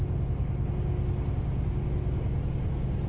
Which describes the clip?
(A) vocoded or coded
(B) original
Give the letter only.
B